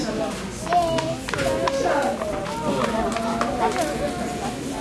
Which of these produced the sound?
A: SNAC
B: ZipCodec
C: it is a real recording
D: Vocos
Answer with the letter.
C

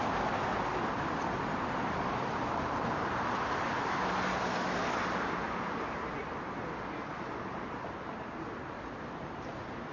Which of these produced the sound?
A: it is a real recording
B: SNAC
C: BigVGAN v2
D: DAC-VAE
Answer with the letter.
A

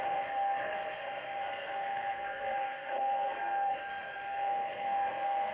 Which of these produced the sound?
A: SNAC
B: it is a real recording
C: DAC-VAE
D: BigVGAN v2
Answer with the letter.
A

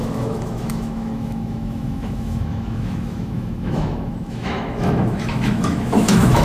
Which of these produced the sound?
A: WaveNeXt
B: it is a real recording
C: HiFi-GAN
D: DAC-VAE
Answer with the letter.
D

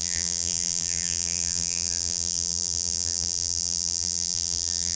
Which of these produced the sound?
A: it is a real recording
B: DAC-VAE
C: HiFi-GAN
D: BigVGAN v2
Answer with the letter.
D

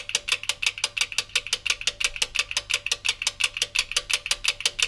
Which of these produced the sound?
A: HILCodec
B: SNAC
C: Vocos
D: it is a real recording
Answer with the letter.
D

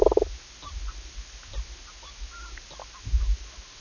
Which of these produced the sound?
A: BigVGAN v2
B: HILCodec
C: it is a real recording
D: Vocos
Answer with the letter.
C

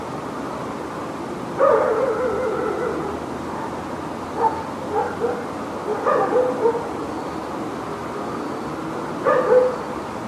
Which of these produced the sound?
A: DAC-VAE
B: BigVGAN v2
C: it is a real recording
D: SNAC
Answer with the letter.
C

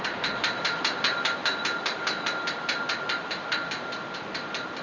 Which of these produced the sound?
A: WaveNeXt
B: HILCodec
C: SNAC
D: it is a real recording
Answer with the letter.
D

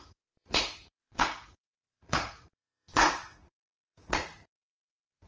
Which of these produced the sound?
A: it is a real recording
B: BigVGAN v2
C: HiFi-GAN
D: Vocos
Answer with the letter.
D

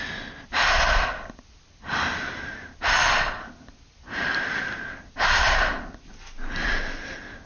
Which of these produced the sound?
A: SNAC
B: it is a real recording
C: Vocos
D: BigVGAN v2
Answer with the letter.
B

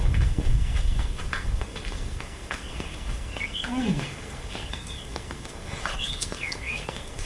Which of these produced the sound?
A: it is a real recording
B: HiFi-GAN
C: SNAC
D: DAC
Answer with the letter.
C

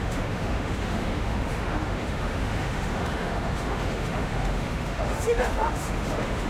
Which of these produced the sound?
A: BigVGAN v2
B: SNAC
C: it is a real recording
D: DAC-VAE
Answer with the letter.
D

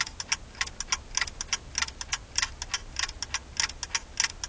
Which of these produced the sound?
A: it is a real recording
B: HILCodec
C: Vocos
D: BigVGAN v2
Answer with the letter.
A